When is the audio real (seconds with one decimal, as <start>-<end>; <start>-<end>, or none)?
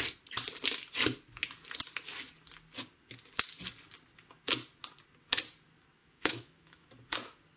0.0-6.0; 6.9-7.6